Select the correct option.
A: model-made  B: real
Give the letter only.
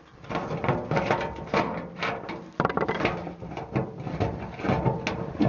B